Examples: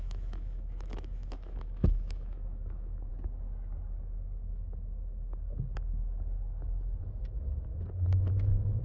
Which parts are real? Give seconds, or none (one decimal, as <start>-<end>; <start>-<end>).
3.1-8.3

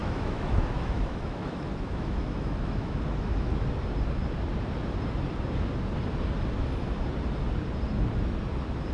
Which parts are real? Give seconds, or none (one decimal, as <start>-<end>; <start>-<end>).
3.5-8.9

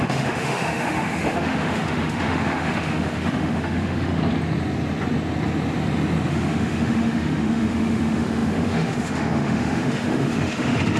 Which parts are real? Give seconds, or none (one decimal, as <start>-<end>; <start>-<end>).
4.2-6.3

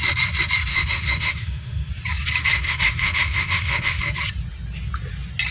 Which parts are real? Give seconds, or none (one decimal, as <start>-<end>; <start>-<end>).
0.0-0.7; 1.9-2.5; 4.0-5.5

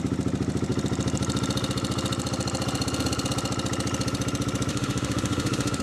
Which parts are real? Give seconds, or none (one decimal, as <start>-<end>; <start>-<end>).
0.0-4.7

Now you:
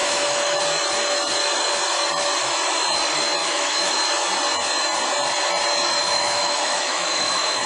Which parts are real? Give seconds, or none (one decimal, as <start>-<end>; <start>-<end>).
0.6-3.4; 3.9-6.0

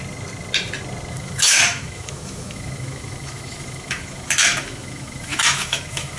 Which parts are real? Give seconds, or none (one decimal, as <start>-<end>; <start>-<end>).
0.0-1.1